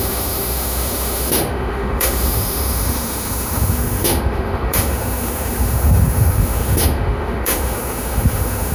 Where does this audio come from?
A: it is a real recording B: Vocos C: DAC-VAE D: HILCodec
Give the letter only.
C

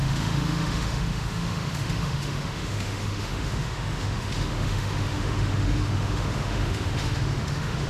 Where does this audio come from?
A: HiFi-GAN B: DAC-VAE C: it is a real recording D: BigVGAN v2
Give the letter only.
B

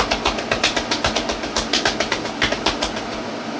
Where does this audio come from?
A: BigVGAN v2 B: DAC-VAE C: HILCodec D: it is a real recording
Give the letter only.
D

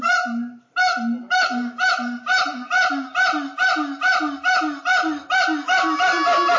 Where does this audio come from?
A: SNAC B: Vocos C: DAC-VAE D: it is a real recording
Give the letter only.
D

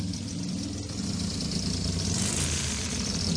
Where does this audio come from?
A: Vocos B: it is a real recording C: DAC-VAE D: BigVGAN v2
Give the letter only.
B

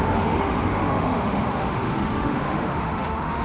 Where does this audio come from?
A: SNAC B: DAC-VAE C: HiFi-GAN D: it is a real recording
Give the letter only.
B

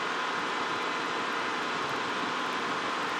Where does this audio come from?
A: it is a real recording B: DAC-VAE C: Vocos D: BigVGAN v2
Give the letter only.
A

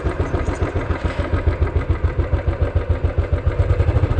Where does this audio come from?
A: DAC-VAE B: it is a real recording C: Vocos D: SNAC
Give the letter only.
B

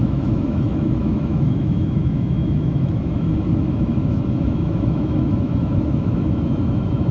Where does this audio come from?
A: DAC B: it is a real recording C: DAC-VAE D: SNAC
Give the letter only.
C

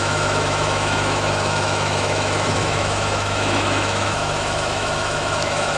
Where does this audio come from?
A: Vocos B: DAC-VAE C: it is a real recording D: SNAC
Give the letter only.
B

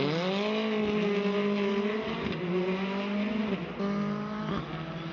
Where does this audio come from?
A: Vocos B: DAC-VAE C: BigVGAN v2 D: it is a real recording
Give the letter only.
D